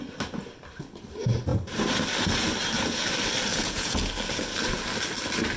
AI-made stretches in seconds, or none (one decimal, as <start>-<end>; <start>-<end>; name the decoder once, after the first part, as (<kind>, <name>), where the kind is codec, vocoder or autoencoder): 3.5-4.1 (vocoder, Vocos)

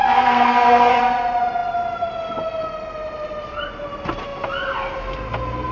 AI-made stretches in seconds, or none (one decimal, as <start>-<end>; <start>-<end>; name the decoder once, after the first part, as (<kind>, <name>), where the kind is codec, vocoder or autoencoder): 0.0-1.0 (codec, SNAC)

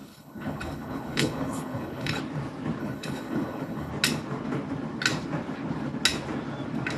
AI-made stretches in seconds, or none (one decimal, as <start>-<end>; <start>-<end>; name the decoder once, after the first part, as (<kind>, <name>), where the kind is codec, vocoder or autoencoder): 0.0-2.2 (codec, HILCodec); 2.8-3.9

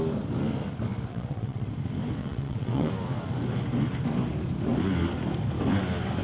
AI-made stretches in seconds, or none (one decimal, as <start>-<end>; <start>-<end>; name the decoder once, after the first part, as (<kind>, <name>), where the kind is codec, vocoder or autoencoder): 1.1-1.7 (vocoder, WaveNeXt); 2.2-2.9

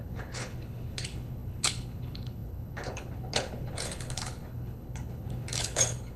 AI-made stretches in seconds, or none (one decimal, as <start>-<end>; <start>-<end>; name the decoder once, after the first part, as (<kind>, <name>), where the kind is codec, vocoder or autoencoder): 0.0-6.2 (codec, HILCodec)

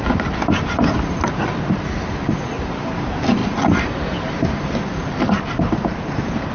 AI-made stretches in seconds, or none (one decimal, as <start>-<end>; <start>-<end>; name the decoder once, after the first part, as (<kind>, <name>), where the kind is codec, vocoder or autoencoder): none